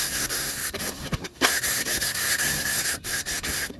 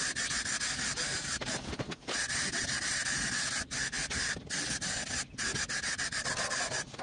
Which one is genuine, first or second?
second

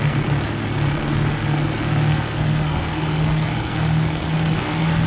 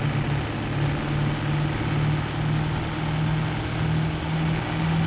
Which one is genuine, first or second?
second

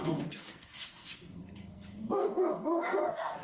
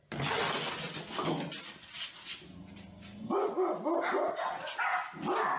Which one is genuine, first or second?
second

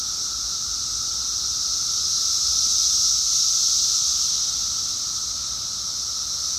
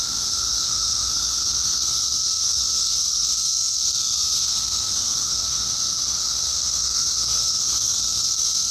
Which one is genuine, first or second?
first